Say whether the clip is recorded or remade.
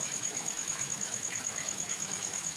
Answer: remade